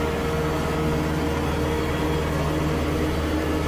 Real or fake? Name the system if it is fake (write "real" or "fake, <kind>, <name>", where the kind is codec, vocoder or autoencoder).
real